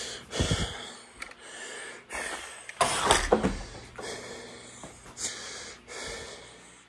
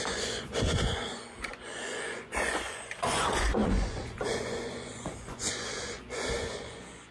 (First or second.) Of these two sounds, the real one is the first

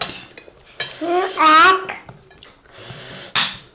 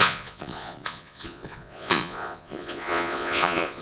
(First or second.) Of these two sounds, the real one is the first